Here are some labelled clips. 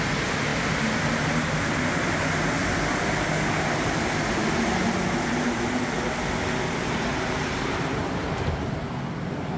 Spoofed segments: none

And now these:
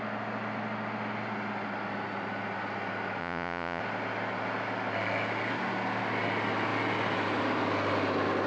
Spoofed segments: 3.2-3.8 (vocoder, Vocos)

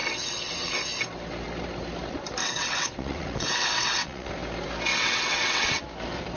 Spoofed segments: 0.0-0.8 (vocoder, WaveNeXt); 2.4-4.3; 4.9-5.8

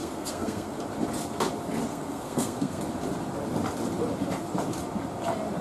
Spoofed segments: 0.0-0.8 (codec, SNAC); 1.9-2.8

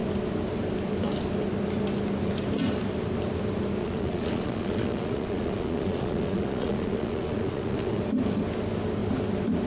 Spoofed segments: 3.8-8.0 (vocoder, Vocos)

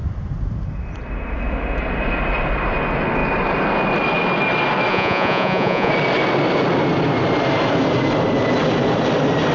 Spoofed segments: 4.9-5.9 (vocoder, Vocos)